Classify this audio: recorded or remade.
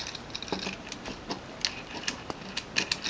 recorded